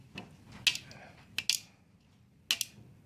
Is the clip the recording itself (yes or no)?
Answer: yes